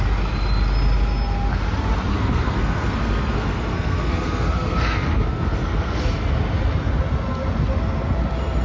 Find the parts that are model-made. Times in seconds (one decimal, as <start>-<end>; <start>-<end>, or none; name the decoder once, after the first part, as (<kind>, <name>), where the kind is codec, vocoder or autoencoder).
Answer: 2.1-6.0 (codec, SNAC)